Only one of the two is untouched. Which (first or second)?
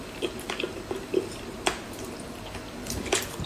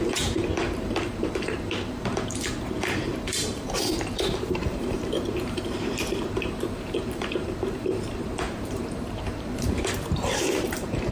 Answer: first